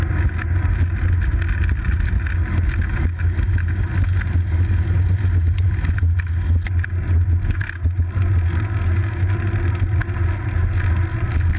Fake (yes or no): no